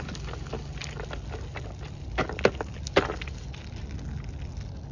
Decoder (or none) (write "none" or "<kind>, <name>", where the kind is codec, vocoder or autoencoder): none